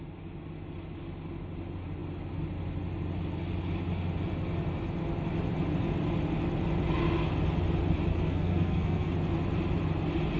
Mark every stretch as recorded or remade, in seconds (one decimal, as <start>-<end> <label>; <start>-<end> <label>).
0.0-8.1 recorded; 8.1-9.1 remade; 9.1-10.4 recorded